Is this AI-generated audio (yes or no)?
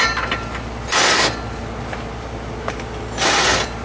no